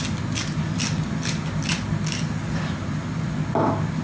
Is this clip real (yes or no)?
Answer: yes